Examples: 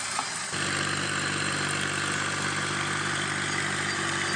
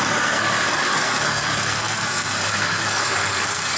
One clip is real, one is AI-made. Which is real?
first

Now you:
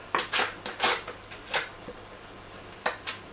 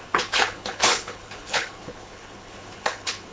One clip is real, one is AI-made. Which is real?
first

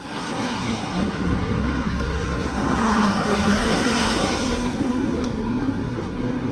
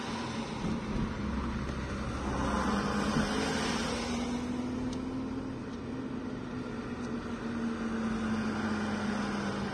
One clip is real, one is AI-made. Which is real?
second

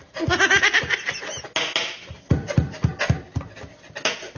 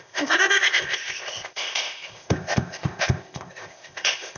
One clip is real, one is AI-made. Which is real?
first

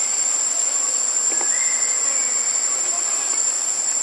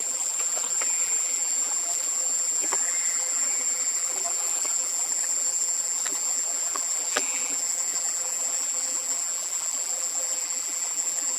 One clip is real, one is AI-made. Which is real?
first